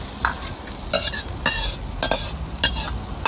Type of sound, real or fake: real